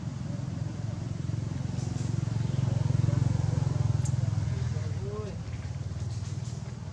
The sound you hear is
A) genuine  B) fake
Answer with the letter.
A